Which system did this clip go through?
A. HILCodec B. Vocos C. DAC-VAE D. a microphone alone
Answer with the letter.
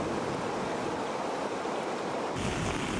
D